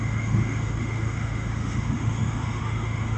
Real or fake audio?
fake